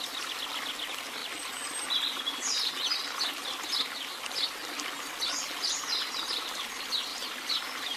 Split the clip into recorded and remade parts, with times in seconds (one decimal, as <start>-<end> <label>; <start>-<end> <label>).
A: 0.0-7.1 recorded; 7.1-8.0 remade